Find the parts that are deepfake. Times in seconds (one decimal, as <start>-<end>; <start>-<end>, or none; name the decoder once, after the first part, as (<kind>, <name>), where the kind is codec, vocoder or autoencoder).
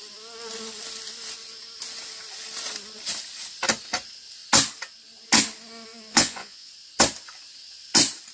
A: 6.1-6.7 (vocoder, Vocos)